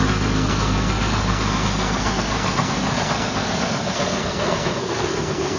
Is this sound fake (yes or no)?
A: yes